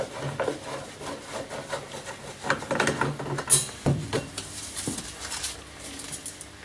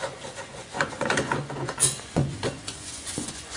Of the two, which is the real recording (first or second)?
first